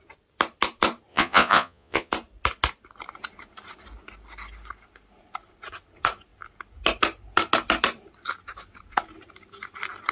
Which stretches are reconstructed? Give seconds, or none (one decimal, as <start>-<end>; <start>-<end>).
1.1-2.1